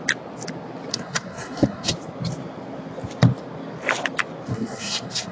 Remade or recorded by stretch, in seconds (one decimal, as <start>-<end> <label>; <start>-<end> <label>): 0.0-0.9 recorded; 0.9-1.9 remade; 1.9-4.5 recorded; 4.5-5.3 remade